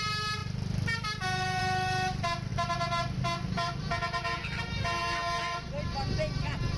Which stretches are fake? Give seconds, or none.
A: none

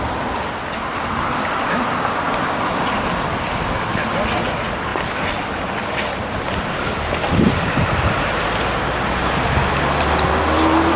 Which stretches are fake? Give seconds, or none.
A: none